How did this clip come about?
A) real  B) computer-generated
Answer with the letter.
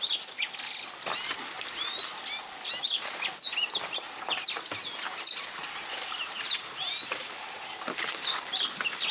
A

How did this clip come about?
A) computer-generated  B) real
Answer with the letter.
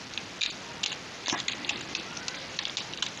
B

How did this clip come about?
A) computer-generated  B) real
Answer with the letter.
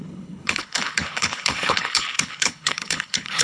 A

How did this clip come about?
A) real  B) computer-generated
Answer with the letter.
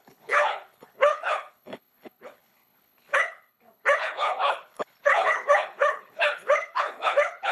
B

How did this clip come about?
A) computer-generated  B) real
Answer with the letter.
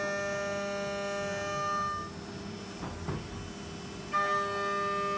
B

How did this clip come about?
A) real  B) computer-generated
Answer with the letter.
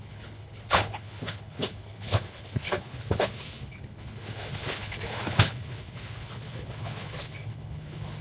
B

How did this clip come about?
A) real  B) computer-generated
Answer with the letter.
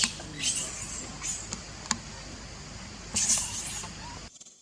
A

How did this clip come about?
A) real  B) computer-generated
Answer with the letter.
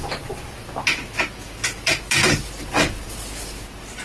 A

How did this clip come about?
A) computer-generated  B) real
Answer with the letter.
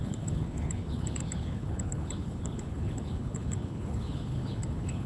A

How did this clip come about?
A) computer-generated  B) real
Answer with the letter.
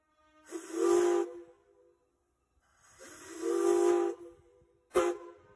B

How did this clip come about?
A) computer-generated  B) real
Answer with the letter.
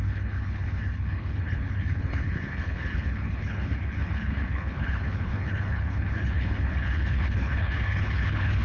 A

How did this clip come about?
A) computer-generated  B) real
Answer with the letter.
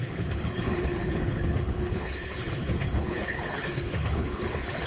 A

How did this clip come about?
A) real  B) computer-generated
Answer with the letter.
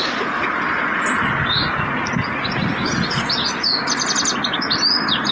A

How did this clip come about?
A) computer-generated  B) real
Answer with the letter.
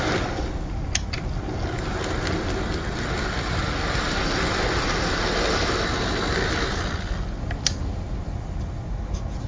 B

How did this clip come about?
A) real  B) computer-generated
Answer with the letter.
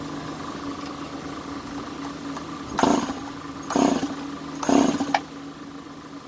A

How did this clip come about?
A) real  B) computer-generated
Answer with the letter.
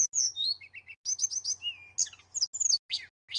A